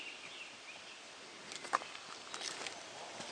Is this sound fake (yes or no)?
no